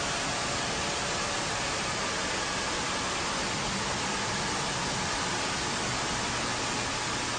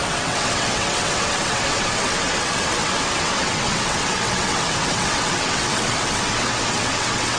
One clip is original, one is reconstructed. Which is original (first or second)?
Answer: first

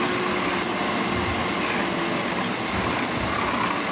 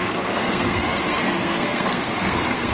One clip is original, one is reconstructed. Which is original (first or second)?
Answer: first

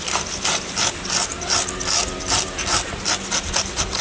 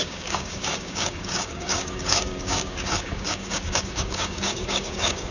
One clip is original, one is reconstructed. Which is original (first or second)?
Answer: first